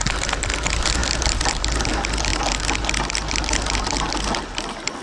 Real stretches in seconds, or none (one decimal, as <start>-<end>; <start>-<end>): 0.0-5.0